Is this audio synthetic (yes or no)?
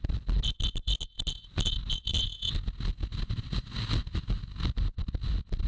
no